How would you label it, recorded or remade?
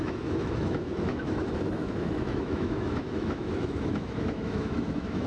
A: remade